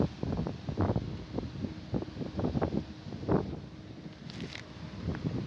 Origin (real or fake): real